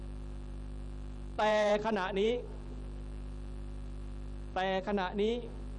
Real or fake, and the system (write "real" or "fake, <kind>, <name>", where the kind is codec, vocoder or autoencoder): fake, vocoder, BigVGAN v2